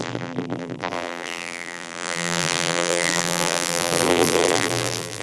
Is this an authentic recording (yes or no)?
no